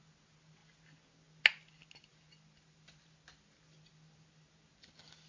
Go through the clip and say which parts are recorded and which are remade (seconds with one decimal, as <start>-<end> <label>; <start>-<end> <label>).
0.0-5.3 recorded